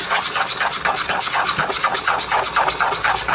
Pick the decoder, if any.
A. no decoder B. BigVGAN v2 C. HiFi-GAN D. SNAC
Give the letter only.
A